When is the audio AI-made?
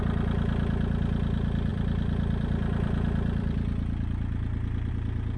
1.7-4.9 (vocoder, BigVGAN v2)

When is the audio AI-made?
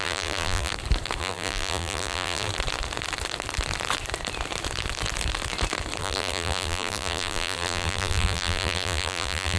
0.0-0.7 (vocoder, BigVGAN v2); 1.2-2.5; 6.0-9.6